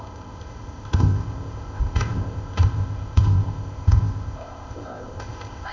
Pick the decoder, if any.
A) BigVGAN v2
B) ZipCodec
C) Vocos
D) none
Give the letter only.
B